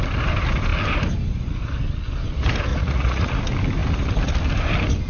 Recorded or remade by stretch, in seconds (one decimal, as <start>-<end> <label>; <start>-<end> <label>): 0.0-2.7 recorded; 2.7-3.4 remade; 3.4-5.1 recorded